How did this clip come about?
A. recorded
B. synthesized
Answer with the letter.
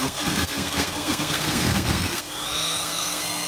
B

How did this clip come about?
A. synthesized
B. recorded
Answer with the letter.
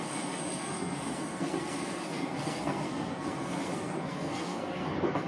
A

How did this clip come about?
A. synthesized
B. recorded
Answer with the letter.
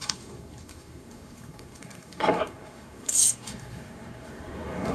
A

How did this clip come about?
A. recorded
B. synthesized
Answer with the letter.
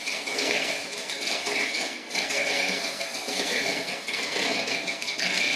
B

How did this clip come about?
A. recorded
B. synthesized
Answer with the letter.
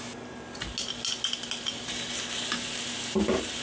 A